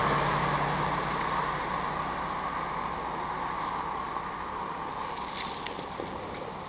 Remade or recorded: recorded